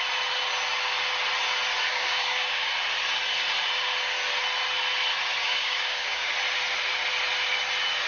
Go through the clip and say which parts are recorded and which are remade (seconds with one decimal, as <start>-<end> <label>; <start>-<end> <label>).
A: 0.0-1.9 recorded; 1.9-2.7 remade; 2.7-5.4 recorded; 5.4-6.3 remade; 6.3-8.1 recorded